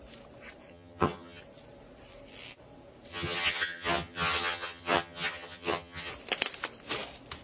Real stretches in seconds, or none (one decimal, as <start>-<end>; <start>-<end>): 0.0-0.7; 1.4-3.1; 6.1-7.4